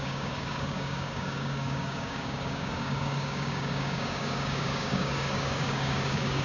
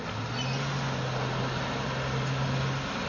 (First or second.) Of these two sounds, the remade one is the first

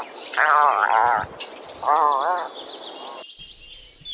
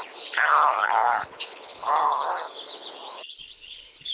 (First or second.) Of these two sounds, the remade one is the second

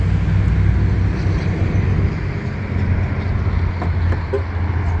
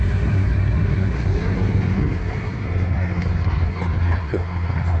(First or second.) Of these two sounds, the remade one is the second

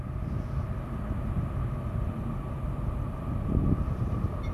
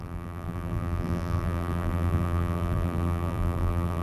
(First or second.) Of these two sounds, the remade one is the second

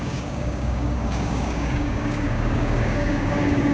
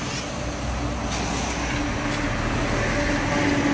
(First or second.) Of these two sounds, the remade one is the first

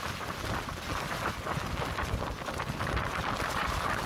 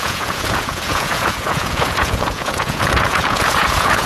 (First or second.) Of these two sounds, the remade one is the second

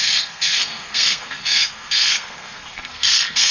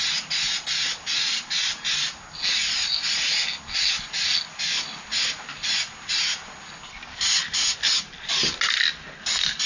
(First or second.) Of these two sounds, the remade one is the first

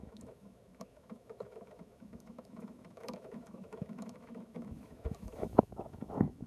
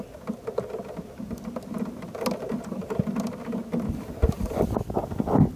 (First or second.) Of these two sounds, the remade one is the first